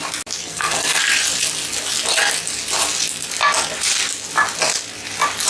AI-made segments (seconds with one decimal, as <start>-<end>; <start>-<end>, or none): 0.4-1.0